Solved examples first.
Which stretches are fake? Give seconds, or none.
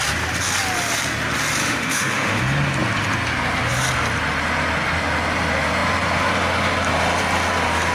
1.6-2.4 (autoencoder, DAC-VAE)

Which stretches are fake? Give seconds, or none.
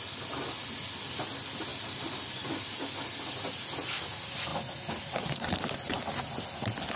1.7-2.5 (vocoder, BigVGAN v2)